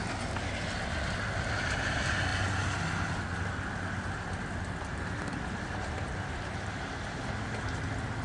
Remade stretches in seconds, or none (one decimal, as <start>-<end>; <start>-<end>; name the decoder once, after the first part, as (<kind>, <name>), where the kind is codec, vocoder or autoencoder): none